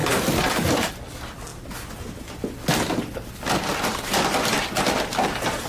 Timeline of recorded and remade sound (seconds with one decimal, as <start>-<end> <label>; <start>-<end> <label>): 0.0-0.9 remade; 0.9-5.7 recorded